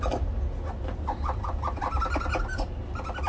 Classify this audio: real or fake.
real